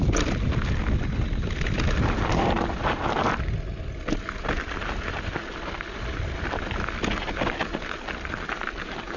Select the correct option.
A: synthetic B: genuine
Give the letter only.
B